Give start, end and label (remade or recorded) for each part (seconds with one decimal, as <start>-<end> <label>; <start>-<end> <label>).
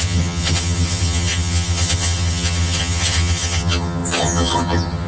0.0-5.1 remade